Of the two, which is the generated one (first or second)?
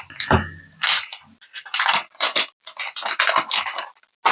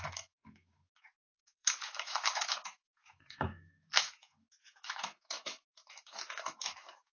second